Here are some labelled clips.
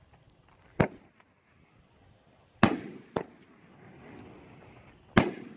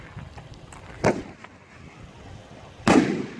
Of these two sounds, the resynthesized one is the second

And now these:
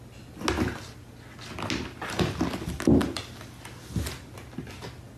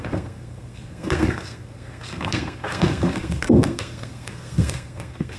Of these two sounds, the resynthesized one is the second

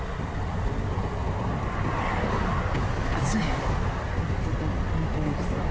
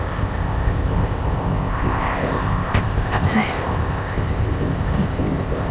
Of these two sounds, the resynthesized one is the second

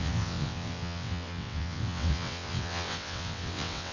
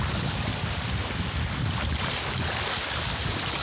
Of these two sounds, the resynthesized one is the first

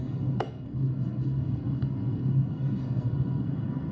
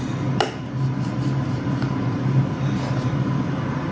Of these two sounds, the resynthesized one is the first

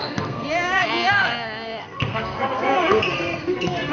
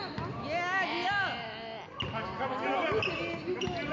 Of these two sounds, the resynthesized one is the first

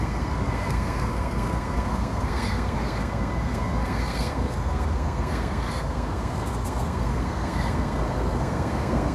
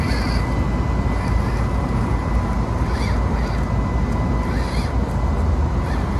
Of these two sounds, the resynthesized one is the first